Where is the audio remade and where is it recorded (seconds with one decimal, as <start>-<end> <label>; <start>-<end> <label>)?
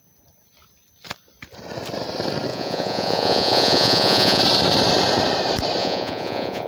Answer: 0.0-2.5 recorded; 2.5-4.4 remade; 4.4-5.8 recorded; 5.8-6.7 remade